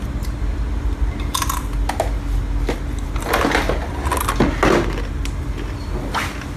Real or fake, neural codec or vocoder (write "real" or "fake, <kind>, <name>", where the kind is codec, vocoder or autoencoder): real